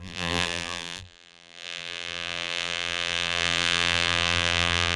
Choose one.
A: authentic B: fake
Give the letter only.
B